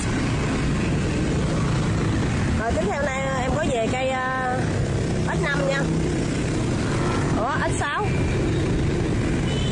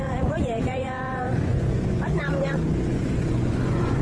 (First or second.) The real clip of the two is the first